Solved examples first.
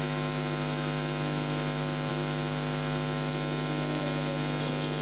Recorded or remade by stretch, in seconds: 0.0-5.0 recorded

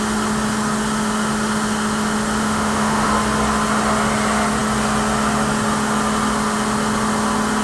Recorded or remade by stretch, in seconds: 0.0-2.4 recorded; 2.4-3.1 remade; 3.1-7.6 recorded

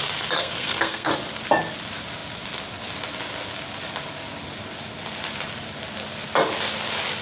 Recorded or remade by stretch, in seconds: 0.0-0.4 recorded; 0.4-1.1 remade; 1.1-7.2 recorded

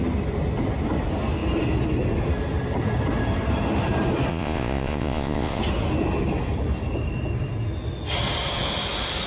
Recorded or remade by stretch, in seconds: 0.0-4.3 recorded; 4.3-5.6 remade; 5.6-9.3 recorded

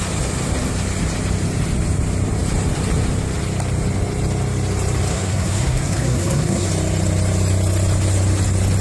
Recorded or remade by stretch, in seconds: 0.0-5.1 recorded; 5.1-6.7 remade; 6.7-8.8 recorded

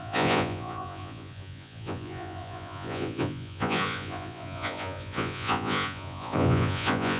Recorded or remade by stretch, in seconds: 0.0-7.2 remade

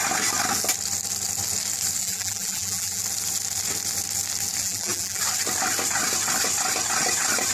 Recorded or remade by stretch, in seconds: 0.0-2.0 recorded; 2.0-3.0 remade; 3.0-4.6 recorded; 4.6-5.2 remade; 5.2-7.5 recorded